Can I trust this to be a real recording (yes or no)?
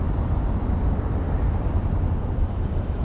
no